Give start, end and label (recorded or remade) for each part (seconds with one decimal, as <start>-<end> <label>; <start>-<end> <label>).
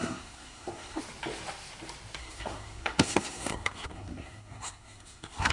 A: 0.0-1.0 remade; 1.0-2.2 recorded; 2.2-5.5 remade